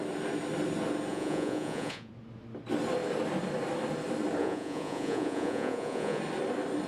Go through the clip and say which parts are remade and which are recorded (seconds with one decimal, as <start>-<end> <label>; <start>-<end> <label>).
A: 0.0-1.1 recorded; 1.1-2.1 remade; 2.1-4.4 recorded; 4.4-6.2 remade; 6.2-6.9 recorded

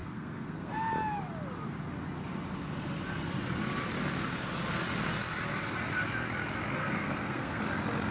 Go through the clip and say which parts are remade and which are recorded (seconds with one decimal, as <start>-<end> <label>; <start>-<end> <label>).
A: 0.0-0.8 remade; 0.8-6.8 recorded; 6.8-7.6 remade; 7.6-8.1 recorded

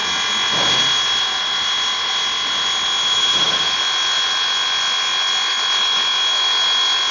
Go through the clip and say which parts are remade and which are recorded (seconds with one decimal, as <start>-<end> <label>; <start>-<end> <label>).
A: 0.0-7.1 recorded

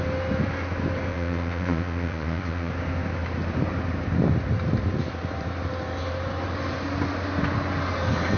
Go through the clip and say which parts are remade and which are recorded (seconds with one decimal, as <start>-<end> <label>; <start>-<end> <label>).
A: 0.0-1.1 recorded; 1.1-2.7 remade; 2.7-8.4 recorded

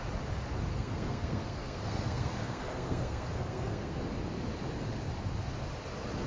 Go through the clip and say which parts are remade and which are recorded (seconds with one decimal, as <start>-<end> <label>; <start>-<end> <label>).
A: 0.0-0.7 recorded; 0.7-4.0 remade; 4.0-6.3 recorded

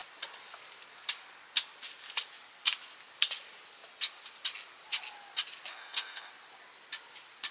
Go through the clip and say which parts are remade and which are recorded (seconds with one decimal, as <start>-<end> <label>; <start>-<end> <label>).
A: 0.0-5.7 recorded; 5.7-6.3 remade; 6.3-7.5 recorded

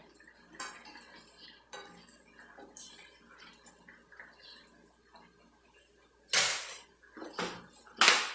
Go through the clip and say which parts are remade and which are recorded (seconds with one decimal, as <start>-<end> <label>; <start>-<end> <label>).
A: 0.0-8.3 recorded